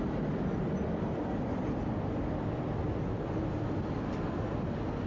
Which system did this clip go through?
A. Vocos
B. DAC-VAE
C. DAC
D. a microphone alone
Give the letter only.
D